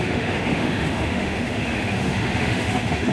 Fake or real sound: fake